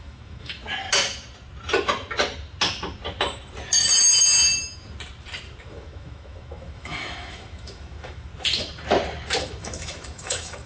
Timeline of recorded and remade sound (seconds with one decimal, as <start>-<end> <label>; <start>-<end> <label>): 0.0-0.6 remade; 0.6-5.6 recorded; 5.6-8.3 remade; 8.3-9.4 recorded; 9.4-10.7 remade